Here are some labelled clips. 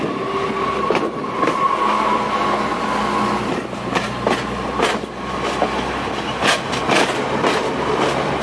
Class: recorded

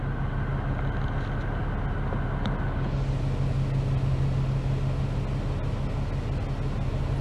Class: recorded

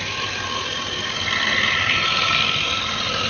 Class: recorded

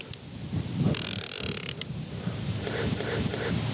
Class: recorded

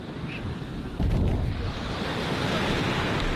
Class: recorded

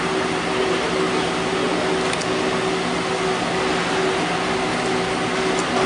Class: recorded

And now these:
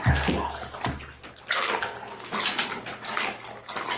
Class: recorded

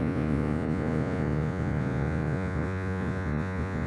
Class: remade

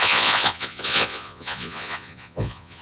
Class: remade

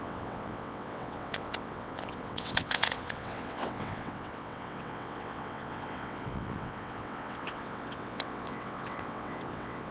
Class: remade